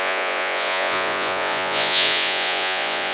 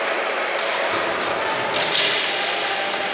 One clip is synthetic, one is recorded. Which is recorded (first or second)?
second